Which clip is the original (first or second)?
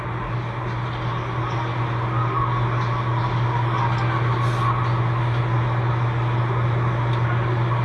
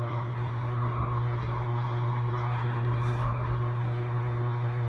first